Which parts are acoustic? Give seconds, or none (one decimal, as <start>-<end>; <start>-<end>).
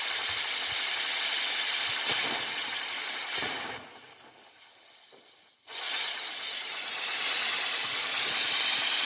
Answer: 0.0-9.0